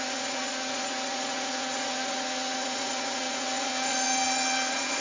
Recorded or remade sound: remade